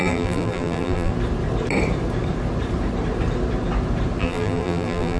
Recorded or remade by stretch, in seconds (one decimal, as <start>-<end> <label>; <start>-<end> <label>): 0.0-1.1 remade; 1.1-4.2 recorded; 4.2-5.2 remade